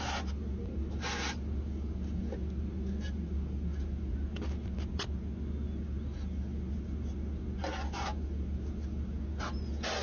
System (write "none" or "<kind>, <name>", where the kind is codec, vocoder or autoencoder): none